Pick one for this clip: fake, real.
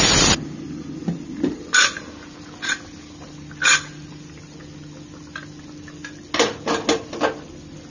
real